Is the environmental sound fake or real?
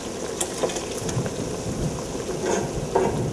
real